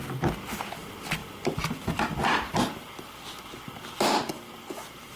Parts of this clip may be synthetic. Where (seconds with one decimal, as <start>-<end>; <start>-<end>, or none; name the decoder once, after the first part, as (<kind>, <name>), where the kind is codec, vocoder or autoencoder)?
none